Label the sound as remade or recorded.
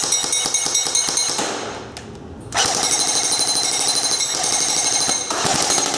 recorded